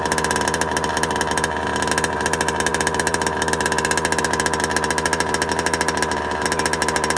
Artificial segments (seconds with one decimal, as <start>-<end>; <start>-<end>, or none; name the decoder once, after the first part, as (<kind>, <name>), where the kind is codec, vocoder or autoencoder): none